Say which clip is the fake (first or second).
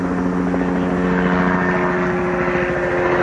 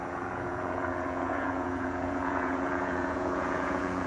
second